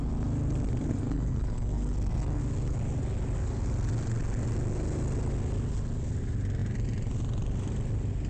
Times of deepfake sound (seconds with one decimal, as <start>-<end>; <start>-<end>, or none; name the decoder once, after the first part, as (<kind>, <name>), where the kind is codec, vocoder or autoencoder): 0.9-2.4 (codec, SNAC)